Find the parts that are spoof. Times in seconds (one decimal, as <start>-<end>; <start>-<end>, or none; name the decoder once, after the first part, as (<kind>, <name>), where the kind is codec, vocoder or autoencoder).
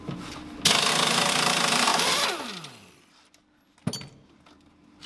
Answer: none